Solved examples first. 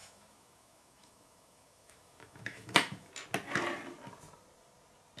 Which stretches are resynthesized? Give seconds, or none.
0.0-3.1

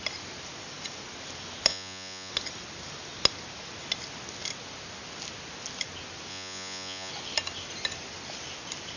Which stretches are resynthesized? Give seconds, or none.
1.7-2.3; 6.3-7.1